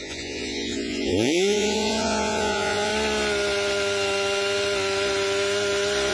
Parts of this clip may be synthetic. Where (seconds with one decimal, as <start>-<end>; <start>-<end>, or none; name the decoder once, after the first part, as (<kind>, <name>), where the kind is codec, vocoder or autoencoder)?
0.0-2.9 (vocoder, Vocos)